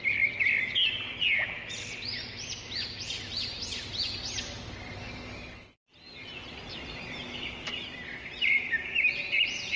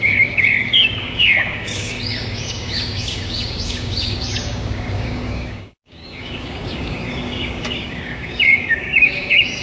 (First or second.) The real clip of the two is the first